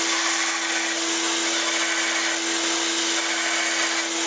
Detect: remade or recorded recorded